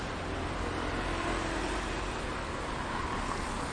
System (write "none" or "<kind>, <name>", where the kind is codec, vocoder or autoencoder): none